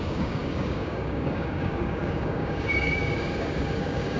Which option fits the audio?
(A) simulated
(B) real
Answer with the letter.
A